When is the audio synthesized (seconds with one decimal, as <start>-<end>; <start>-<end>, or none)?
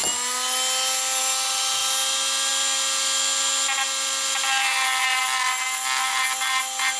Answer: none